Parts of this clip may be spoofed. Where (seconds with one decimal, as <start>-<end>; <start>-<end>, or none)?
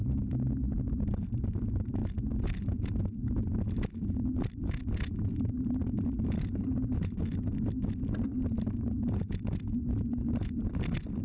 none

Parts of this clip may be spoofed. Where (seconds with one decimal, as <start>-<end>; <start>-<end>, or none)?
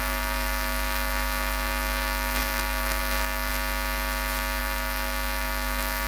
0.0-3.5; 4.6-6.1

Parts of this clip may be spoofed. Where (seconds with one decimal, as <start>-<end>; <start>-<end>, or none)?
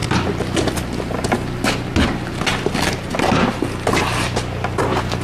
none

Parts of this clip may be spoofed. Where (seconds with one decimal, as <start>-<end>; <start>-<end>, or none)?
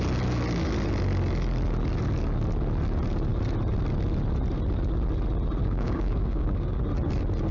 5.6-6.8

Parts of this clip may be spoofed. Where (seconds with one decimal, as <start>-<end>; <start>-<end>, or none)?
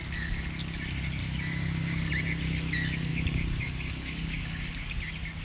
1.2-2.1; 3.1-4.7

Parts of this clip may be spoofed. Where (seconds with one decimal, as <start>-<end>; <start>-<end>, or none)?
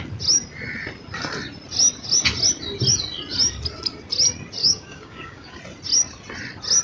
4.6-5.6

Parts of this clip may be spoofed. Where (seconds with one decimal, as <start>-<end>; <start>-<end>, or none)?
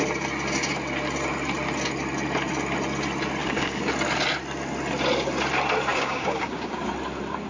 3.4-3.9; 5.9-6.9